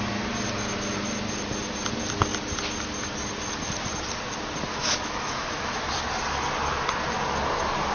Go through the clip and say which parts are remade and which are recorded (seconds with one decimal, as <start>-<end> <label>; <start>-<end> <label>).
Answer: 0.0-4.7 recorded; 4.7-5.8 remade; 5.8-7.9 recorded